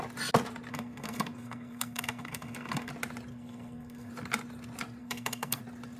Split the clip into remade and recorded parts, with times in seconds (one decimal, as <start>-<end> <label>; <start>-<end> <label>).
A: 0.0-0.7 recorded; 0.7-2.9 remade; 2.9-3.3 recorded; 3.3-4.1 remade; 4.1-5.0 recorded; 5.0-5.6 remade; 5.6-6.0 recorded